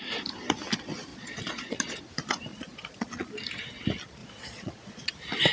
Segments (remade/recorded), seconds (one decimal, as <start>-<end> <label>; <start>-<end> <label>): 0.0-1.1 recorded; 1.1-2.0 remade; 2.0-2.5 recorded; 2.5-3.3 remade; 3.3-4.2 recorded; 4.2-5.1 remade; 5.1-5.5 recorded

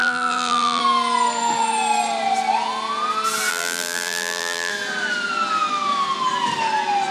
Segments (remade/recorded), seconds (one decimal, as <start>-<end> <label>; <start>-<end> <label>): 0.0-0.8 remade; 0.8-3.5 recorded; 3.5-4.7 remade; 4.7-7.1 recorded

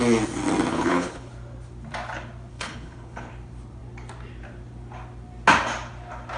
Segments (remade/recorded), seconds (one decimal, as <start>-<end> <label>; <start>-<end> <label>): 0.0-0.7 recorded; 0.7-1.3 remade; 1.3-2.5 recorded; 2.5-3.3 remade; 3.3-6.4 recorded

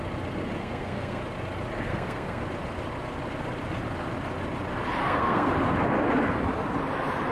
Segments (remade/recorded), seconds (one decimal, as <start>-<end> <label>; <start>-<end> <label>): 0.0-0.6 recorded; 0.6-1.2 remade; 1.2-1.9 recorded; 1.9-2.4 remade; 2.4-5.0 recorded; 5.0-5.5 remade; 5.5-7.3 recorded

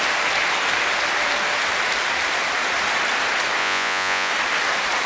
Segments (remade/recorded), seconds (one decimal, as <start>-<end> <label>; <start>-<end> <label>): 0.0-3.6 recorded; 3.6-4.3 remade; 4.3-5.1 recorded

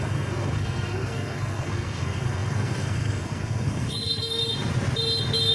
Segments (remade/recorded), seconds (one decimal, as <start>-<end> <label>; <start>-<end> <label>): 0.0-4.4 remade; 4.4-5.5 recorded